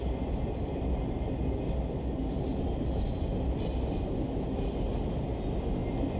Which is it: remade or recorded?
recorded